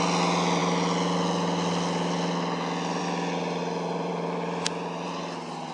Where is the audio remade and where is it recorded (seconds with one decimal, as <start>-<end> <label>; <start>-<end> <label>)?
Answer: 0.0-3.6 recorded; 3.6-5.2 remade; 5.2-5.7 recorded